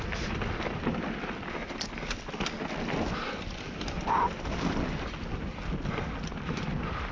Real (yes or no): yes